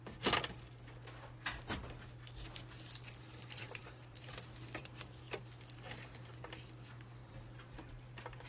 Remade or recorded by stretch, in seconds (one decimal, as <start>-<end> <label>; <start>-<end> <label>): 0.0-3.6 recorded; 3.6-4.3 remade; 4.3-4.8 recorded; 4.8-5.4 remade; 5.4-7.2 recorded; 7.2-8.5 remade